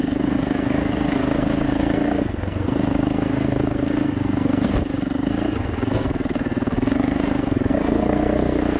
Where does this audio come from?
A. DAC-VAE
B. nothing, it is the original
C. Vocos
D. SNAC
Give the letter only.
D